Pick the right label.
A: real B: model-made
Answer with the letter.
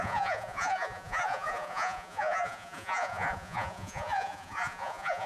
B